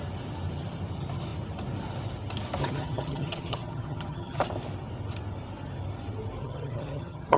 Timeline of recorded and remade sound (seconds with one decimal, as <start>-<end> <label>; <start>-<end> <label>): 0.0-2.6 recorded; 2.6-4.4 remade; 4.4-6.4 recorded; 6.4-7.4 remade